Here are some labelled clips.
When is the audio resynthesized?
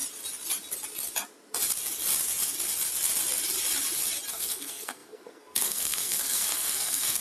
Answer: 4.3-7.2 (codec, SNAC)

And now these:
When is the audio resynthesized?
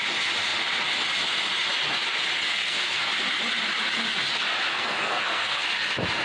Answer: 2.5-3.1 (codec, SNAC); 4.7-5.7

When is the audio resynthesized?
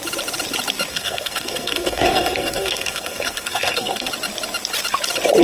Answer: 0.9-4.1 (codec, SNAC)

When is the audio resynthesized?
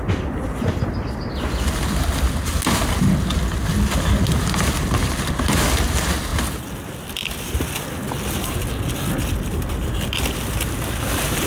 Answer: none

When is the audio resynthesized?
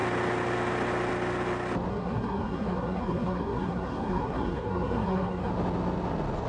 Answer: 1.9-5.5 (codec, SNAC)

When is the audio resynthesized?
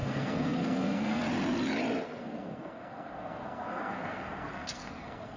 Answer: 0.0-1.2 (codec, SNAC); 2.2-5.4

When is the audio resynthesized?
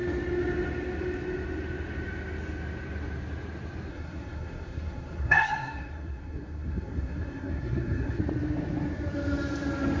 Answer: 3.9-8.2 (codec, SNAC)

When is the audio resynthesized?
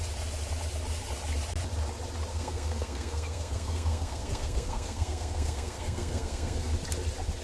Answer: 2.3-6.7 (codec, SNAC)